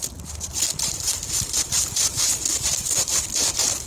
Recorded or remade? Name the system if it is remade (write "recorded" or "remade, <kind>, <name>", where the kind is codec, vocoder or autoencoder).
recorded